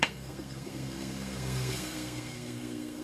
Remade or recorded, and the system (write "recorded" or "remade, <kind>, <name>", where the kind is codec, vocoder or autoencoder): remade, codec, SNAC